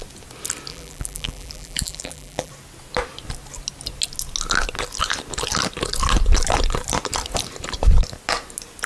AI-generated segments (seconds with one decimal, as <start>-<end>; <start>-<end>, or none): 0.7-2.5